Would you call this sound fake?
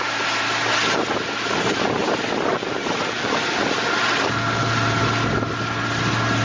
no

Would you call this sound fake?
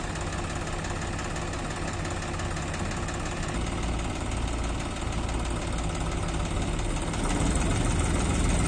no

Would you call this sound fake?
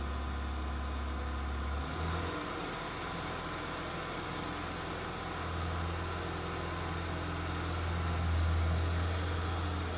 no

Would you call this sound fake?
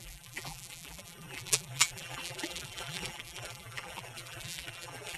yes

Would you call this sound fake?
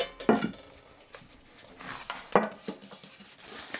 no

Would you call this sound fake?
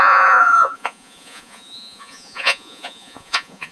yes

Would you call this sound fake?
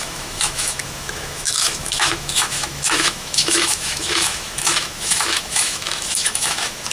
yes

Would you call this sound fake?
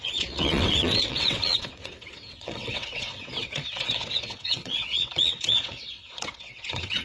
yes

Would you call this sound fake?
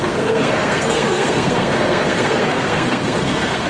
yes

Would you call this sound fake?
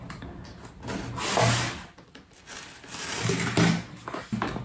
no